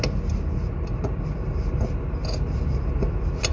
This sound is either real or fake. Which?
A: real